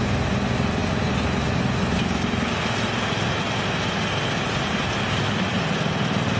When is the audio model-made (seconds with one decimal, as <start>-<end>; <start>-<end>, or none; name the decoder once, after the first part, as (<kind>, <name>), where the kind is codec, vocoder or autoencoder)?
none